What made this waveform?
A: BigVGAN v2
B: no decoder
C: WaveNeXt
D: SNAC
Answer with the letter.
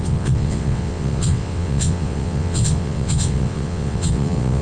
C